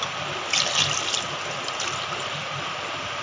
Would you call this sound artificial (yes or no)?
no